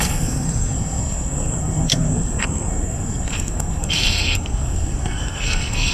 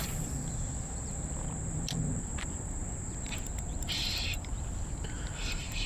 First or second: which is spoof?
first